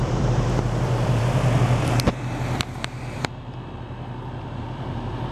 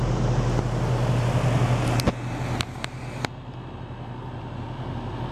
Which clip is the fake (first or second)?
first